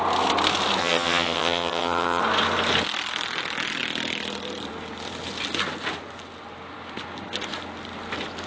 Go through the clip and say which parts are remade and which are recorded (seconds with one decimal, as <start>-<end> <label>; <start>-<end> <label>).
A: 0.0-0.8 recorded; 0.8-2.2 remade; 2.2-8.5 recorded